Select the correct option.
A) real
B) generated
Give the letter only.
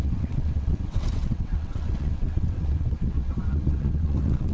B